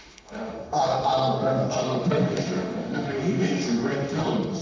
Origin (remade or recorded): remade